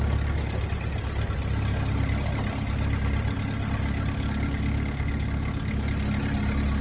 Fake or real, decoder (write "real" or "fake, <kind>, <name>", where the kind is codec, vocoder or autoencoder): real